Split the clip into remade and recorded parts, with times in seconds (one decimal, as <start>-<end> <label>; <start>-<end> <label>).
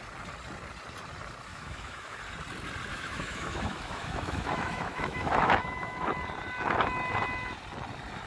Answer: 0.0-1.5 recorded; 1.5-2.2 remade; 2.2-2.9 recorded; 2.9-6.1 remade; 6.1-8.3 recorded